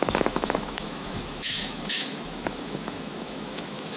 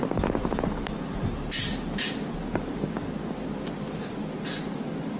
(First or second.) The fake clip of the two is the first